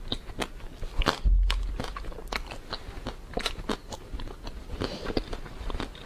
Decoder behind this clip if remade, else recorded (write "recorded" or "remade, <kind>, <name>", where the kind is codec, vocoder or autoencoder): recorded